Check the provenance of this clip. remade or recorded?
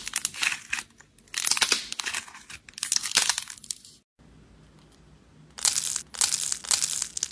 recorded